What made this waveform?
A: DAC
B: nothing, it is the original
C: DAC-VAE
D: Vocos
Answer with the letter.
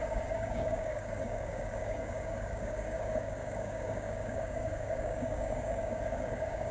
A